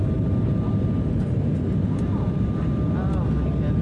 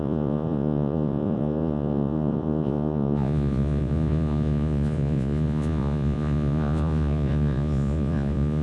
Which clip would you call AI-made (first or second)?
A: second